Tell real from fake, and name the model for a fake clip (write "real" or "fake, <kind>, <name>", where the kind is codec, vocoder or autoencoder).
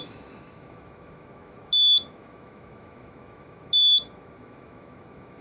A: fake, autoencoder, DAC-VAE